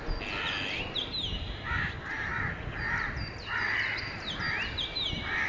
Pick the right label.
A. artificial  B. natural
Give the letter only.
B